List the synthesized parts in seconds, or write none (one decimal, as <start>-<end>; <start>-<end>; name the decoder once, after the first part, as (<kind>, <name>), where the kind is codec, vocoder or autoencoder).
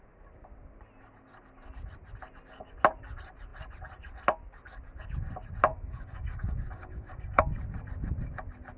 5.7-7.4 (codec, DAC)